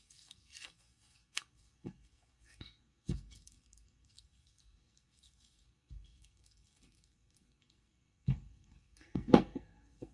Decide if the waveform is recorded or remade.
remade